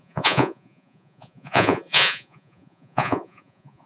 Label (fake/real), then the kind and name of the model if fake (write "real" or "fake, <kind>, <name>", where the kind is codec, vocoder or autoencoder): fake, vocoder, Vocos